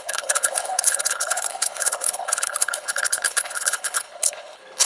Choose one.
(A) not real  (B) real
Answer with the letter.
A